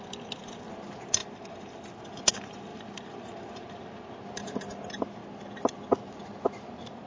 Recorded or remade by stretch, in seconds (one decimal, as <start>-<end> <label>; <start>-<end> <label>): 0.0-1.2 recorded; 1.2-2.0 remade; 2.0-2.7 recorded; 2.7-3.3 remade; 3.3-7.1 recorded